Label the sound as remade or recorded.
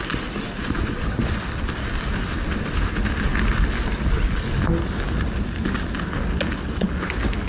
recorded